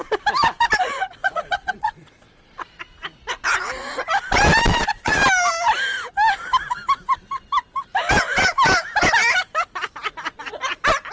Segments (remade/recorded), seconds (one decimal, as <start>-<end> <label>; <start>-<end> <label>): 0.0-1.2 recorded; 1.2-2.8 remade; 2.8-4.7 recorded; 4.7-5.2 remade; 5.2-11.1 recorded